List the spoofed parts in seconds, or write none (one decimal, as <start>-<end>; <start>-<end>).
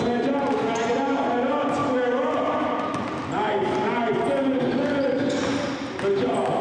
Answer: none